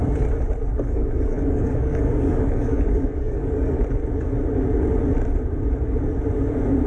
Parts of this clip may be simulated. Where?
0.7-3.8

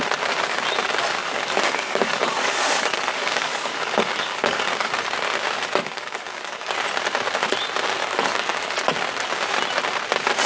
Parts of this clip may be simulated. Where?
1.2-4.9; 5.8-6.7; 8.0-8.8